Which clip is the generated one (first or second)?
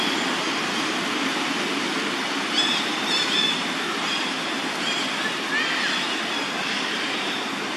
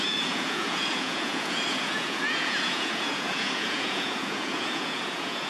second